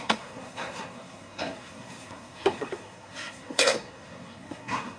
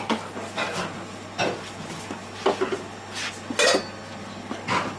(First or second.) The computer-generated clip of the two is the first